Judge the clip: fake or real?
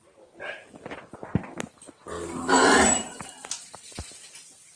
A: real